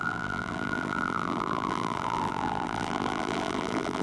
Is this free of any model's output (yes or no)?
no